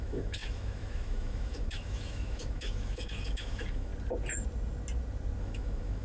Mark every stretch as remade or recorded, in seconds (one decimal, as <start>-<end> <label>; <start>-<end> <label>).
0.0-3.9 remade; 3.9-5.4 recorded; 5.4-6.0 remade